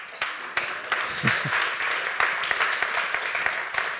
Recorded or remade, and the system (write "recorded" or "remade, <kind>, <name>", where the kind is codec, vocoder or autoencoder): recorded